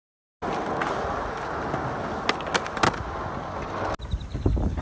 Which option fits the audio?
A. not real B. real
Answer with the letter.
B